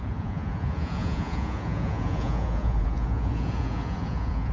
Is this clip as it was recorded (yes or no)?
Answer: no